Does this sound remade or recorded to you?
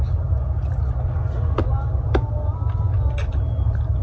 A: recorded